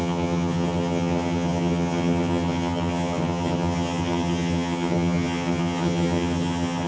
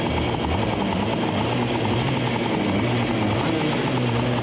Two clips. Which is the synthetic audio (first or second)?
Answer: first